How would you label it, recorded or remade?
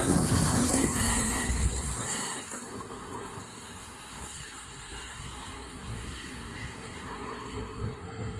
remade